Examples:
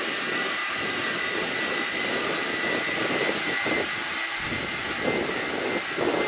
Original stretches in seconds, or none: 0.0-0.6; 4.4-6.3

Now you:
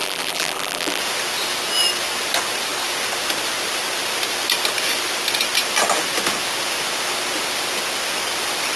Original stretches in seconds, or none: 1.0-8.8

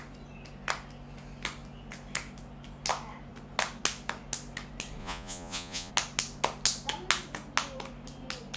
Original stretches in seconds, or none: 0.0-5.0; 5.9-8.6